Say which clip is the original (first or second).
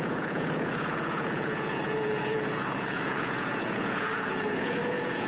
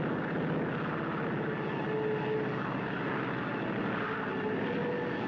second